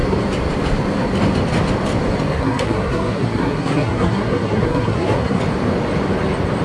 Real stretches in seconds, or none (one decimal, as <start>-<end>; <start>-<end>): 0.0-2.3; 5.4-6.6

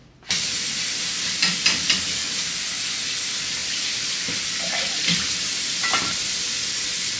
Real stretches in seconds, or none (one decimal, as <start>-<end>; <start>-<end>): 1.6-3.6; 4.5-7.2